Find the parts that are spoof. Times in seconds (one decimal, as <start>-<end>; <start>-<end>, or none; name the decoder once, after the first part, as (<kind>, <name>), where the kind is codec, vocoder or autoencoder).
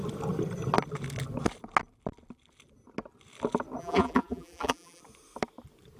3.8-5.0 (vocoder, BigVGAN v2)